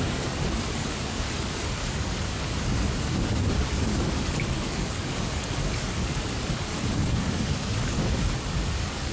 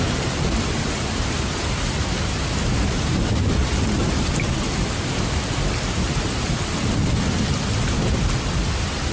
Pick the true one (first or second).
second